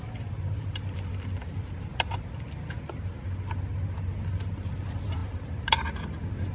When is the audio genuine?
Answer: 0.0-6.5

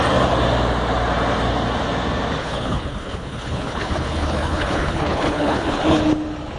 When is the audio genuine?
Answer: 0.0-2.4; 6.0-6.6

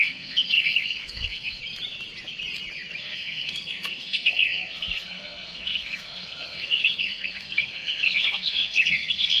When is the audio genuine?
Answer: 1.6-3.0

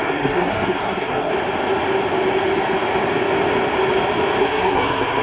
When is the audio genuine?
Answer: 1.3-4.4

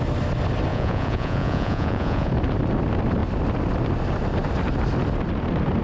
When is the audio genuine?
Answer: 0.0-0.7; 2.3-5.8